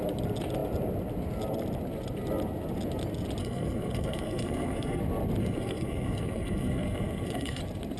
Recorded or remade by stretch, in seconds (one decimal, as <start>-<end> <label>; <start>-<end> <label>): 0.0-3.4 recorded; 3.4-5.0 remade; 5.0-5.4 recorded; 5.4-7.6 remade; 7.6-8.0 recorded

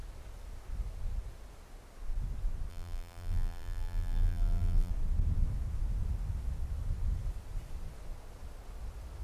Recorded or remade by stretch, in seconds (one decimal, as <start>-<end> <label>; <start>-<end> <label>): 0.0-2.7 recorded; 2.7-4.9 remade; 4.9-9.2 recorded

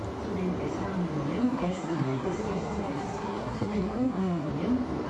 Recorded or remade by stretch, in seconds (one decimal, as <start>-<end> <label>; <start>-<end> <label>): 0.0-1.4 recorded; 1.4-4.5 remade; 4.5-5.1 recorded

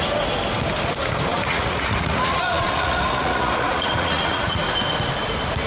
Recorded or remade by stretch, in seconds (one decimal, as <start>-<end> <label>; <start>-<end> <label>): 0.0-1.3 recorded; 1.3-4.6 remade; 4.6-5.7 recorded

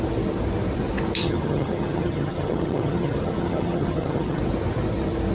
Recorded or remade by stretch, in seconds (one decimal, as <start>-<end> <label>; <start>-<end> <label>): 0.0-1.2 recorded; 1.2-4.4 remade; 4.4-5.3 recorded

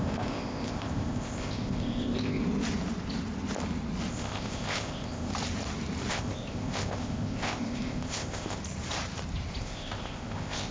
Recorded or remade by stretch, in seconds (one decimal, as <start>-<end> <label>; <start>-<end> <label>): 0.0-2.4 remade; 2.4-4.1 recorded; 4.1-5.3 remade; 5.3-6.1 recorded; 6.1-8.6 remade; 8.6-9.6 recorded; 9.6-10.7 remade

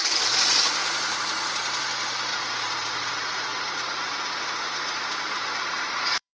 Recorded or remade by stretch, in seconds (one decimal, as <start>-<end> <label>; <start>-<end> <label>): 0.0-0.8 recorded; 0.8-1.8 remade; 1.8-2.3 recorded; 2.3-6.4 remade